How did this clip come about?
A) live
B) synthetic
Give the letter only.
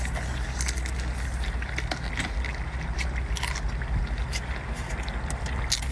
A